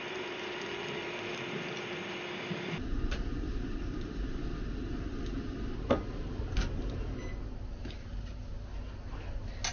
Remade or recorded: recorded